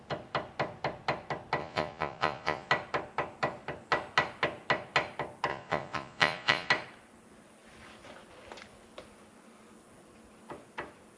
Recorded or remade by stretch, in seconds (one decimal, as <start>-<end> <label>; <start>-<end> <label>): 0.0-1.6 recorded; 1.6-2.7 remade; 2.7-5.5 recorded; 5.5-6.7 remade; 6.7-11.2 recorded